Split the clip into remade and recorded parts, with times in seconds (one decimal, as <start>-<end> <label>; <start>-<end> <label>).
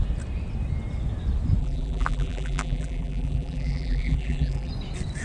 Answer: 0.0-1.6 recorded; 1.6-4.7 remade; 4.7-5.2 recorded